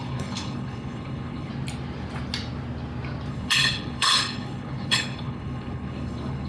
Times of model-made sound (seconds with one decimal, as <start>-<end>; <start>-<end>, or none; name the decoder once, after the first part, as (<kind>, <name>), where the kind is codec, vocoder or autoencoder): 0.0-1.5 (codec, HILCodec); 3.3-6.5